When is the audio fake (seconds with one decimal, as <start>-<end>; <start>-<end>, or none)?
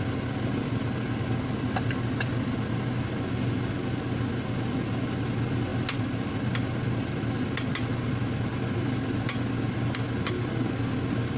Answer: none